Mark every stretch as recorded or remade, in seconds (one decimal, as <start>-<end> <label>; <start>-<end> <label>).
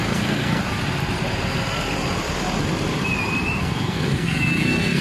0.0-0.6 remade; 0.6-3.6 recorded; 3.6-5.0 remade